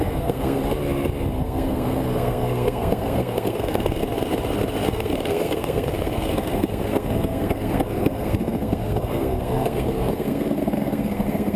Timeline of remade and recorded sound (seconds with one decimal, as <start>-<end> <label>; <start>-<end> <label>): 0.0-0.6 remade; 0.6-1.4 recorded; 1.4-4.0 remade; 4.0-4.9 recorded; 4.9-11.6 remade